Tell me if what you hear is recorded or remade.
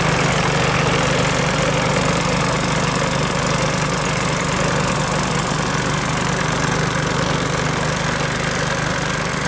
recorded